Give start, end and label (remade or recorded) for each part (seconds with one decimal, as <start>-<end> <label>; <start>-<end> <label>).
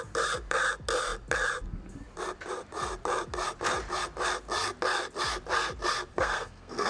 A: 0.0-6.1 recorded; 6.1-6.9 remade